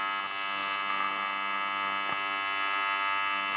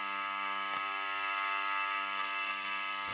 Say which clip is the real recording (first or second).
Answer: first